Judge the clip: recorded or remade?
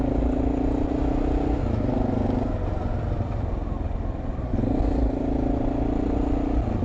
recorded